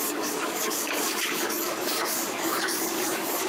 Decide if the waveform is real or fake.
fake